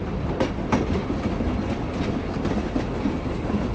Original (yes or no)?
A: yes